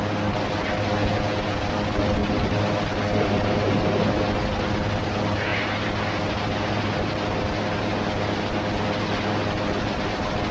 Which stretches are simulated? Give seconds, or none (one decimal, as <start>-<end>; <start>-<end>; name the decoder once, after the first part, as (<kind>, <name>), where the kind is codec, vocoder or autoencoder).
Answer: 1.0-1.6 (vocoder, Vocos)